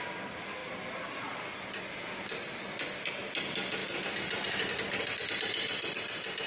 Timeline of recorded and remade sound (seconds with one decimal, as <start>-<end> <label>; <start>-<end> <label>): 0.0-6.5 recorded